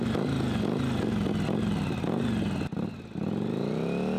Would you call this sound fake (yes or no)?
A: no